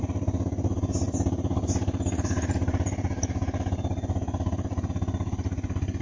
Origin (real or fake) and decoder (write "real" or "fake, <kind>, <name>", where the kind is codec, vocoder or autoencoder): real